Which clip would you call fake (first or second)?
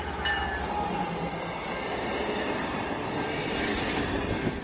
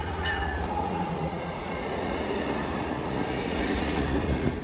second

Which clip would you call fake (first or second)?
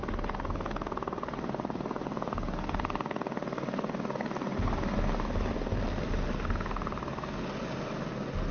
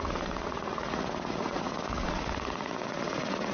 second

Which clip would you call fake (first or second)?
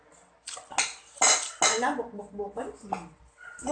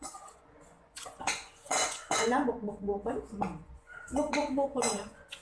second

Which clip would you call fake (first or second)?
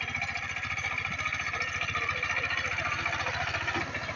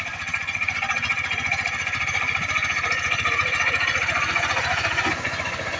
second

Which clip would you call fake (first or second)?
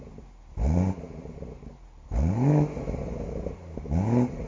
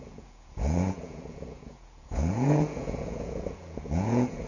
second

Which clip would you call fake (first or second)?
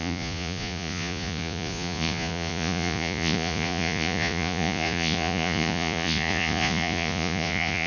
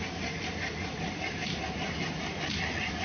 first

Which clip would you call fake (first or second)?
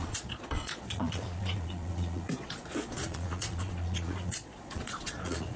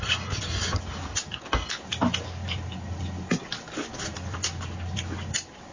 first